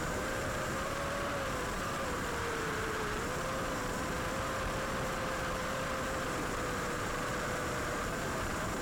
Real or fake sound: fake